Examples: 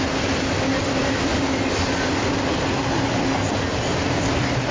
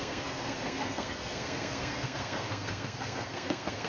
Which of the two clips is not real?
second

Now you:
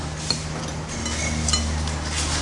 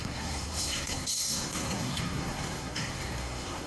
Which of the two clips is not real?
second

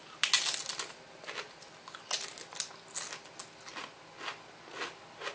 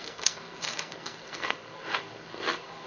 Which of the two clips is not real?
second